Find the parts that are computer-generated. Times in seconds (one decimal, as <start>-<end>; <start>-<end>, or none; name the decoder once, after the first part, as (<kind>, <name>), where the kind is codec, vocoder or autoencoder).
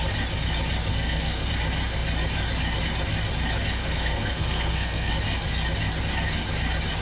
0.9-1.5 (codec, SNAC); 3.8-5.1